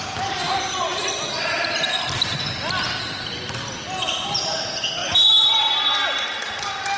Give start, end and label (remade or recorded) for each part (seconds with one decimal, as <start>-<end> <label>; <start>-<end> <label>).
0.0-0.9 recorded; 0.9-3.0 remade; 3.0-5.0 recorded; 5.0-6.6 remade; 6.6-7.0 recorded